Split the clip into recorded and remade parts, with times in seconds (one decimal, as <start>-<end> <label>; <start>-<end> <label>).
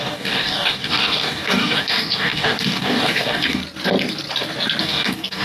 0.0-3.6 remade; 3.6-4.8 recorded; 4.8-5.4 remade